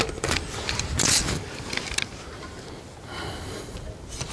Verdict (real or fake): real